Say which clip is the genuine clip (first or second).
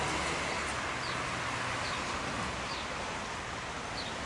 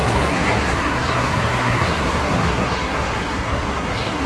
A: first